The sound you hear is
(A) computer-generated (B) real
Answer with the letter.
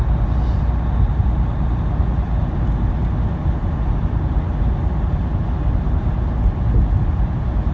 B